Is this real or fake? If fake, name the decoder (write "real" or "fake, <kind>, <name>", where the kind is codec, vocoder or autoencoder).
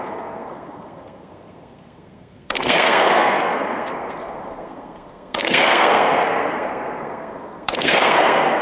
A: fake, codec, SNAC